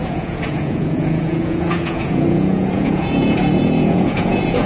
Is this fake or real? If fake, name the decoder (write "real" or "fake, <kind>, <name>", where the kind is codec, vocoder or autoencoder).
fake, vocoder, Vocos